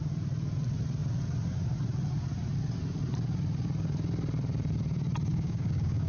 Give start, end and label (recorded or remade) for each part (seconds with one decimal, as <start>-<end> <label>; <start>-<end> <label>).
0.0-5.3 recorded; 5.3-6.1 remade